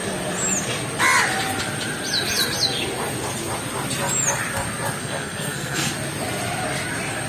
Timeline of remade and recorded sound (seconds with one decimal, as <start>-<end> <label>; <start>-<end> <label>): 0.0-5.0 recorded; 5.0-5.9 remade; 5.9-7.3 recorded